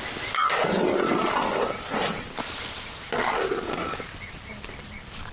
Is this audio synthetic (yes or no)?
no